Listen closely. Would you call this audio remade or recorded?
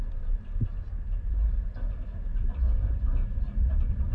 recorded